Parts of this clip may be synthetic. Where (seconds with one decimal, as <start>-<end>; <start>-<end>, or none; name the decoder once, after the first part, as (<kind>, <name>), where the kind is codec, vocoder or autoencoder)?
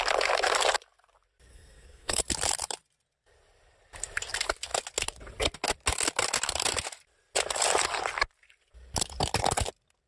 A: 1.5-2.2 (codec, SNAC)